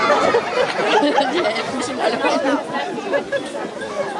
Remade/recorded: recorded